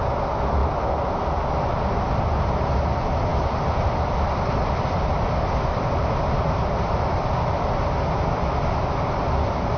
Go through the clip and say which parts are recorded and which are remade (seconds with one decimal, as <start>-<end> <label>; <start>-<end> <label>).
0.0-3.3 recorded; 3.3-8.5 remade; 8.5-9.8 recorded